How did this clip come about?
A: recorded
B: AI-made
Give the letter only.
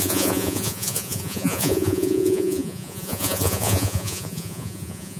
B